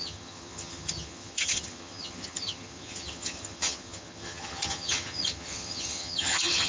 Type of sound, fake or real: fake